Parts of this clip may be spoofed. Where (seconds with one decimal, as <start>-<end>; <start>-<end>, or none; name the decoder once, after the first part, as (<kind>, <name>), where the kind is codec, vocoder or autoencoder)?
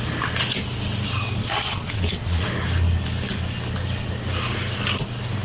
1.4-2.5 (vocoder, Vocos)